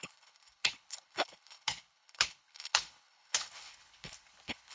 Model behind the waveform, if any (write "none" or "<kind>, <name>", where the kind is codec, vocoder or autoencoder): codec, HILCodec